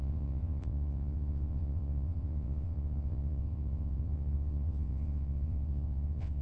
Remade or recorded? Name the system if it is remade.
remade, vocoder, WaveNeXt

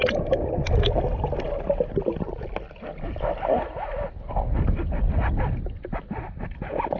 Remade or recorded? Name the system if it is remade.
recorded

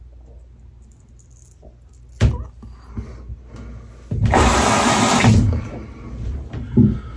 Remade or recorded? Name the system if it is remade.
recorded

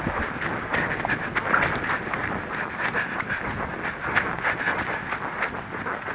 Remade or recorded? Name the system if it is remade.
recorded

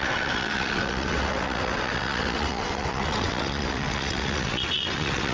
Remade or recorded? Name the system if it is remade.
remade, vocoder, WaveNeXt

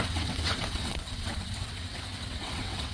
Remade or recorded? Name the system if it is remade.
remade, vocoder, WaveNeXt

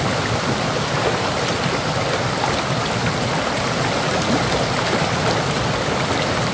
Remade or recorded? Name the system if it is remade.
recorded